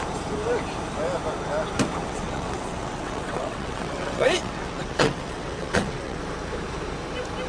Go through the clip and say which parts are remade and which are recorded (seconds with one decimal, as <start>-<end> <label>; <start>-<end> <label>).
0.0-2.0 recorded; 2.0-6.2 remade; 6.2-7.5 recorded